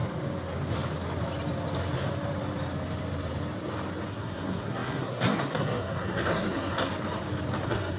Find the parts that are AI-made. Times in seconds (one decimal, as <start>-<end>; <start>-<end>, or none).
4.1-6.9; 7.6-8.0